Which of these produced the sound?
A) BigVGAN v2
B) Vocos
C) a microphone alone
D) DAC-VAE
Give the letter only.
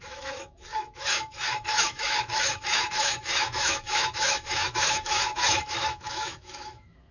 D